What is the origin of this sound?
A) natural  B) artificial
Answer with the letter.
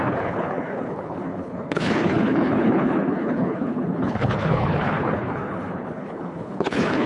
B